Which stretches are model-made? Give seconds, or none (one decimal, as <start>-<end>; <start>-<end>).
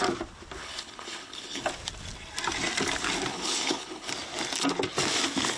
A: 0.6-1.6; 3.3-4.1